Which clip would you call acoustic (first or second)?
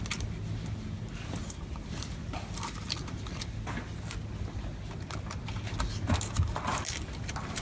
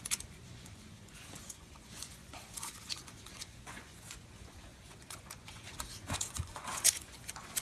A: first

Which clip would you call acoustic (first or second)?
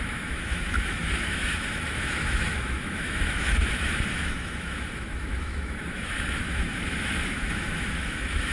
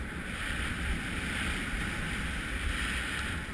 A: second